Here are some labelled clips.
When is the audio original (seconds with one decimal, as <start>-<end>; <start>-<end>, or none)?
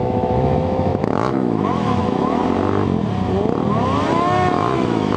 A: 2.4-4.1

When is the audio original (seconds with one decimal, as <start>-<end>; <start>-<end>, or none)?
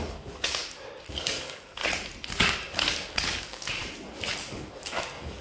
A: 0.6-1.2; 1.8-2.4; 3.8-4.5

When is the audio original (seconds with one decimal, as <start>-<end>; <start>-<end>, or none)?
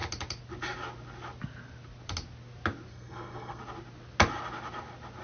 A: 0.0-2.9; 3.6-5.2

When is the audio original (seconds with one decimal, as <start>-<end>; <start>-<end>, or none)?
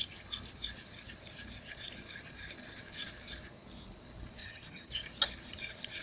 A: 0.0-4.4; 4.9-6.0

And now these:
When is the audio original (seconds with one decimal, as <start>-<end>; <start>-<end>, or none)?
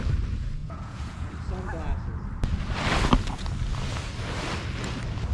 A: 0.0-0.6; 1.3-5.3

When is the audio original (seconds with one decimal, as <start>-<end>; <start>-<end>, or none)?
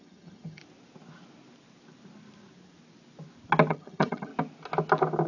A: 0.6-3.7; 4.3-5.3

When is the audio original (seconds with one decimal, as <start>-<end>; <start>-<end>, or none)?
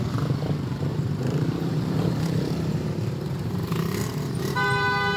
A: 0.0-0.9; 4.0-5.2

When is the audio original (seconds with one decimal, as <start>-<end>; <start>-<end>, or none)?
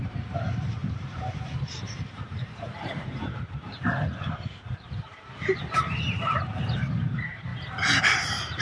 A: 7.5-8.0